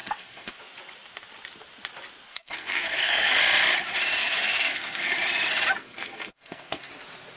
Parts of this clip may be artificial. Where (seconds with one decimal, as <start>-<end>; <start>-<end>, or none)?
0.0-0.6; 2.3-3.4; 4.2-5.1; 5.8-6.9

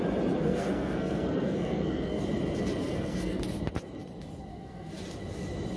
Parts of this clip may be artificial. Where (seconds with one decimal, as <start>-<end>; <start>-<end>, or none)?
0.4-2.2; 2.8-3.4; 4.5-5.0

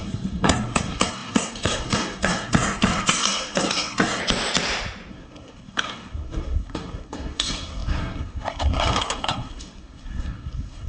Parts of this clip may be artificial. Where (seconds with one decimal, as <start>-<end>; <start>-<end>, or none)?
0.0-4.2; 5.1-10.9

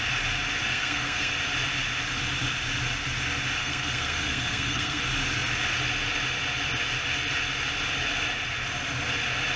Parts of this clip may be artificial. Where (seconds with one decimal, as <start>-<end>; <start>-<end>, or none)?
0.6-1.3; 3.6-5.0

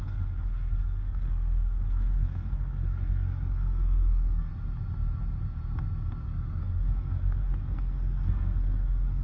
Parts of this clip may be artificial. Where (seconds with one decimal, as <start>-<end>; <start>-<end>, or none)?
0.0-4.5; 6.2-9.2

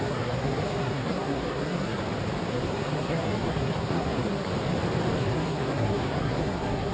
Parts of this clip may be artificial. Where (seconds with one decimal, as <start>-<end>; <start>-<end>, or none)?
0.0-2.0; 2.5-4.5; 5.2-6.9

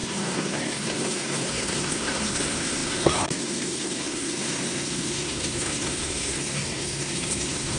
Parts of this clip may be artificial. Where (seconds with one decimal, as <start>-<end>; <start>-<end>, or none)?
0.0-7.8

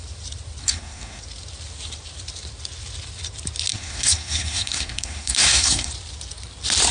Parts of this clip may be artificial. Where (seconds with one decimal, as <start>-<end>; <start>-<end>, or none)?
0.6-1.2; 3.7-5.9